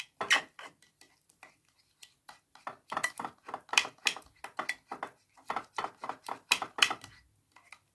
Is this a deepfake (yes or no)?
no